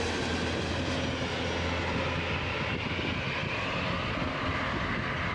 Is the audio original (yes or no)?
yes